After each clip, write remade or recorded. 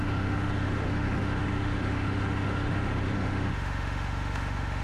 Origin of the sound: remade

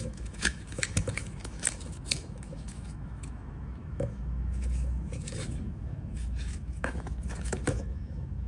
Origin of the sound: remade